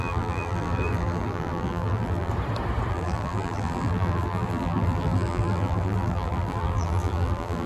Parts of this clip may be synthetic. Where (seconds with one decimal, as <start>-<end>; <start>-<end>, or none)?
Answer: 0.0-2.3; 2.9-7.7